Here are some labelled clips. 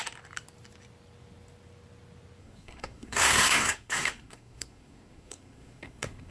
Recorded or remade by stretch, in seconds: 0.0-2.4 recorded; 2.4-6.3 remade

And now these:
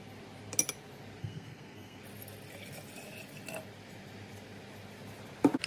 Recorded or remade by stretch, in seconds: 0.0-1.2 recorded; 1.2-2.0 remade; 2.0-5.7 recorded

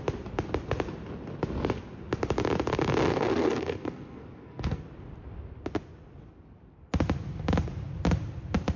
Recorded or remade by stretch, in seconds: 0.0-3.1 recorded; 3.1-4.8 remade; 4.8-8.8 recorded